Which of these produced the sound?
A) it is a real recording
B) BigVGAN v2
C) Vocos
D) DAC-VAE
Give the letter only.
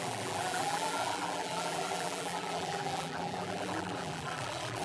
B